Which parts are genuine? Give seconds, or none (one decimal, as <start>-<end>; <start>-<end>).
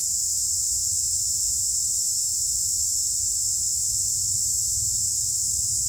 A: 0.0-1.7; 2.3-5.9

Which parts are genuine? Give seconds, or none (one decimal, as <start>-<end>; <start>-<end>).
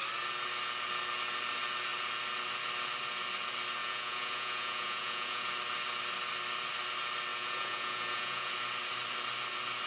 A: 0.0-3.8; 5.5-7.3; 8.5-9.9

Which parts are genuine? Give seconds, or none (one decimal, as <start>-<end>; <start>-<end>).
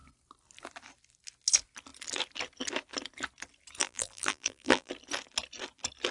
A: 0.0-3.8; 4.9-6.1